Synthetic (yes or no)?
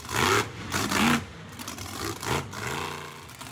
no